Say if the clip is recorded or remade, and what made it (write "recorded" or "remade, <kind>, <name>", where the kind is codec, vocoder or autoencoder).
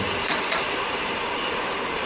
remade, vocoder, BigVGAN v2